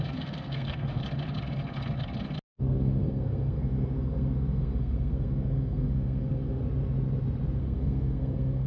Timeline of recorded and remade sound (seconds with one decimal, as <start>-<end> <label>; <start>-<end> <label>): 0.0-1.0 remade; 1.0-2.6 recorded; 2.6-6.6 remade; 6.6-7.6 recorded; 7.6-8.7 remade